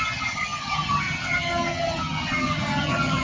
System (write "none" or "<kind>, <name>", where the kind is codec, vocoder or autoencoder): vocoder, HiFi-GAN